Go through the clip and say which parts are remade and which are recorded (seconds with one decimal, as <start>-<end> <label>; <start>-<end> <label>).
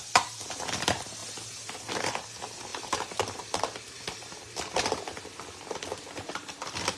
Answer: 0.0-2.7 recorded; 2.7-5.0 remade; 5.0-7.0 recorded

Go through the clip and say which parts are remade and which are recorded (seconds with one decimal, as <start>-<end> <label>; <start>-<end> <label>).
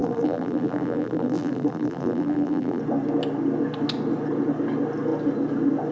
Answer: 0.0-2.8 remade; 2.8-5.9 recorded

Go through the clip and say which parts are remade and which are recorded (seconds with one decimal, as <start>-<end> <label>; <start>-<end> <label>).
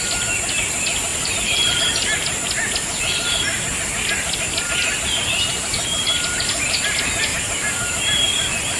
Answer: 0.0-1.1 recorded; 1.1-1.8 remade; 1.8-7.3 recorded; 7.3-8.0 remade; 8.0-8.8 recorded